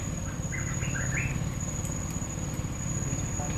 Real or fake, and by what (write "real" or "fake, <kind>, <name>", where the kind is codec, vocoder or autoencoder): real